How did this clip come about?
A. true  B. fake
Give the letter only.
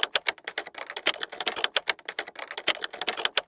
A